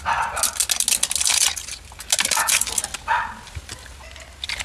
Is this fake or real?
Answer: real